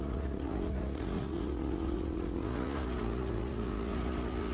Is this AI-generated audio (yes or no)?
yes